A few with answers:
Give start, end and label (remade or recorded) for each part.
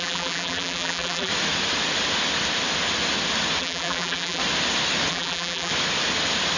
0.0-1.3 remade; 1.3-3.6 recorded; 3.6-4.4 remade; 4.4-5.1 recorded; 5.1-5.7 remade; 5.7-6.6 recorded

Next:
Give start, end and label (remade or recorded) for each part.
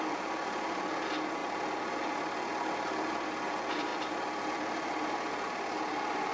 0.0-6.3 recorded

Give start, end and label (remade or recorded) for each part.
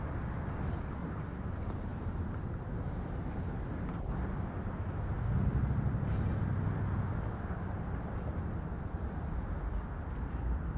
0.0-1.0 recorded; 1.0-2.5 remade; 2.5-10.8 recorded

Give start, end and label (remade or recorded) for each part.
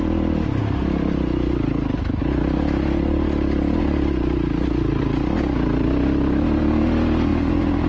0.0-7.3 recorded; 7.3-7.9 remade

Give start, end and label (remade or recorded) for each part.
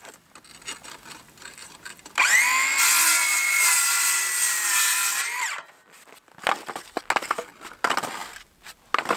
0.0-9.2 recorded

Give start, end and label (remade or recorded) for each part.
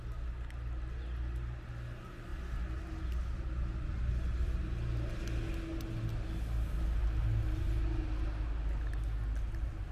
0.0-9.9 recorded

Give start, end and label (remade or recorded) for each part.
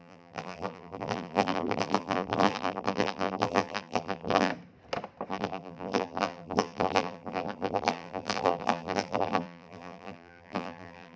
0.0-4.5 remade; 4.5-5.3 recorded; 5.3-11.2 remade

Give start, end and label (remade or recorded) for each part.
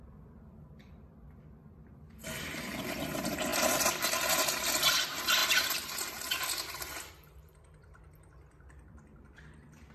0.0-9.9 remade